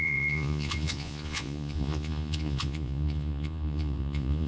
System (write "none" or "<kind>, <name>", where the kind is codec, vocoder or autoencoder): vocoder, Vocos